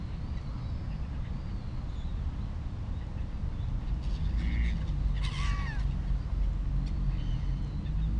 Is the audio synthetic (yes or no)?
no